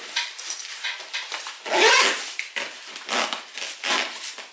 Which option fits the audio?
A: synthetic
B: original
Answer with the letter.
B